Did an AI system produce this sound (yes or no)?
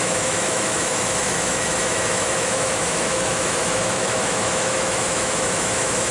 yes